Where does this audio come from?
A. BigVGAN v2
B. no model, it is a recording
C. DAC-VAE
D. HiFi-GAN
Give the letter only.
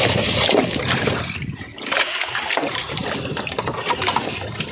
A